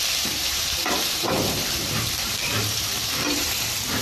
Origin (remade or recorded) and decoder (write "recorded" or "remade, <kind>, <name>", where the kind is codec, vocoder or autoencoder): remade, vocoder, BigVGAN v2